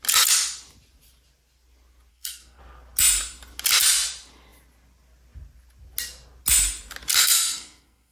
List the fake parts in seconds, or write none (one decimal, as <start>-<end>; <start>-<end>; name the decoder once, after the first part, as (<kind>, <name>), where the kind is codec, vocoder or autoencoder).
2.1-2.6 (codec, SNAC); 7.2-8.1

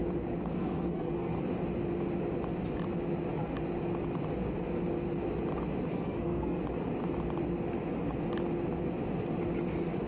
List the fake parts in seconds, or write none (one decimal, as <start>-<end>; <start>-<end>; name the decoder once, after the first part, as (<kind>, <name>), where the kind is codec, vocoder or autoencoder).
0.5-1.4 (codec, SNAC); 5.9-6.6

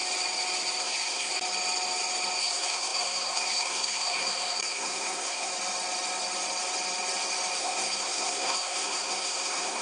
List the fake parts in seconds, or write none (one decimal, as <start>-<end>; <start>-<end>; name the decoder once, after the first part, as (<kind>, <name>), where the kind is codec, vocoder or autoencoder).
0.8-1.3 (codec, SNAC); 2.4-5.5; 7.6-9.8